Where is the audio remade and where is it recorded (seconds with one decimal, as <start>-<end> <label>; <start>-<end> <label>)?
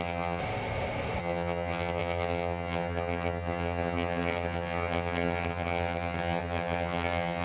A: 0.0-0.4 remade; 0.4-1.2 recorded; 1.2-7.4 remade